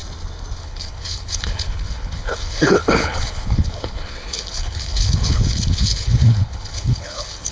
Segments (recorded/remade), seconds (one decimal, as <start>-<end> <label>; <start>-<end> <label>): 0.0-0.6 recorded; 0.6-7.5 remade